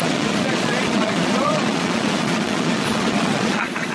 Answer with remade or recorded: remade